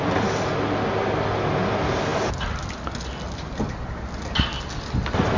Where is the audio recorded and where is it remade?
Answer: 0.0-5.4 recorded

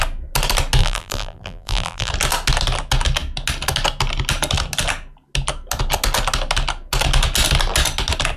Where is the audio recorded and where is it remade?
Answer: 0.0-0.8 recorded; 0.8-2.1 remade; 2.1-8.4 recorded

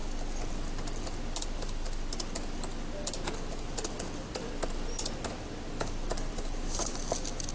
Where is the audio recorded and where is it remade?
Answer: 0.0-6.1 recorded; 6.1-7.0 remade; 7.0-7.5 recorded

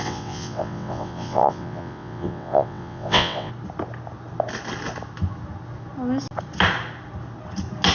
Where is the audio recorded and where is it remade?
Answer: 0.0-3.5 remade; 3.5-7.9 recorded